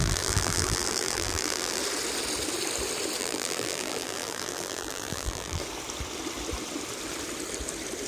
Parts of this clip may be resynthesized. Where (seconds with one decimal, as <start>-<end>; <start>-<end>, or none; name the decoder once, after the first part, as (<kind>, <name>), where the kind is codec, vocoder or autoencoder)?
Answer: 0.0-1.8 (vocoder, BigVGAN v2); 3.2-5.6